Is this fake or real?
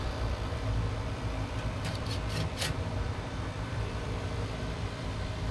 fake